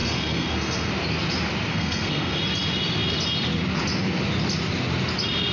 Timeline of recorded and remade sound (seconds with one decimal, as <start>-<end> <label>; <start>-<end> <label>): 0.0-0.9 remade; 0.9-1.7 recorded; 1.7-2.4 remade; 2.4-5.5 recorded